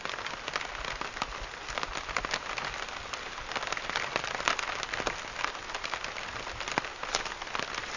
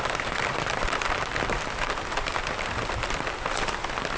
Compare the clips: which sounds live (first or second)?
first